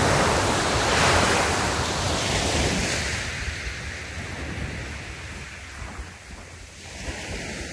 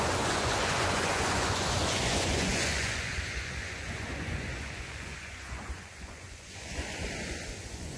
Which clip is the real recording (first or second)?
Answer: first